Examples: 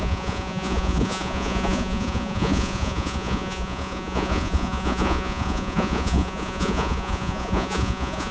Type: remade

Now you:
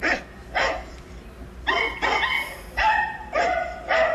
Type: recorded